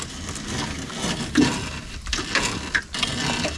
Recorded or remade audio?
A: recorded